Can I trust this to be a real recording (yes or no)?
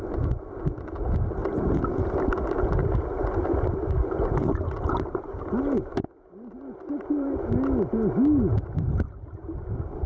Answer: yes